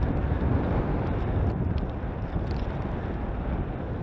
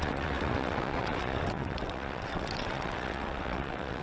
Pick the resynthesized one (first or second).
second